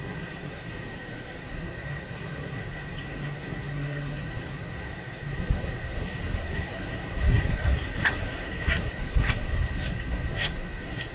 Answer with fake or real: fake